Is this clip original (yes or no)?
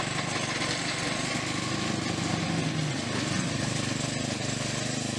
yes